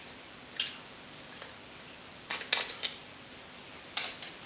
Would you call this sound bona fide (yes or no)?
yes